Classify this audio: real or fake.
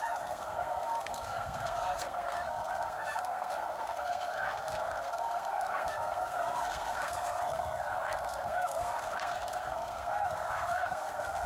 fake